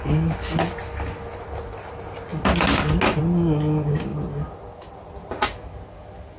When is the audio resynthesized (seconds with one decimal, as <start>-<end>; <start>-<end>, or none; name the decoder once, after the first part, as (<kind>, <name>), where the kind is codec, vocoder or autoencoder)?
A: none